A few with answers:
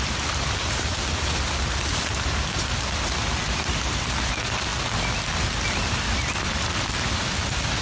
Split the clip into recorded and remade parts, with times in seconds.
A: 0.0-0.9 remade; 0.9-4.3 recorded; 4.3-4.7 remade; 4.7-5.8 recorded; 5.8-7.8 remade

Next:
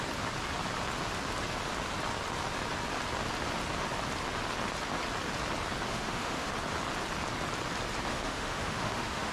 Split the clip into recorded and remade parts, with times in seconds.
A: 0.0-5.9 recorded; 5.9-6.5 remade; 6.5-8.1 recorded; 8.1-9.3 remade

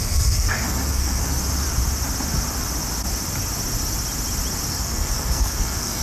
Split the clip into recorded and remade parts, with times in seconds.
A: 0.0-1.4 remade; 1.4-4.7 recorded; 4.7-6.0 remade

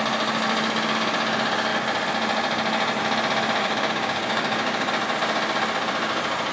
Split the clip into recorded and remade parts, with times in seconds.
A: 0.0-3.6 recorded; 3.6-4.9 remade; 4.9-6.5 recorded

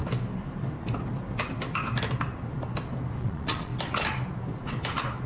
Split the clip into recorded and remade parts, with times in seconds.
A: 0.0-3.2 recorded; 3.2-3.7 remade; 3.7-5.3 recorded